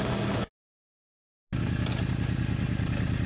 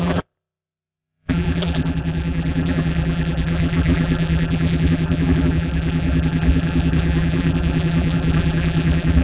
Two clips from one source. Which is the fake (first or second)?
second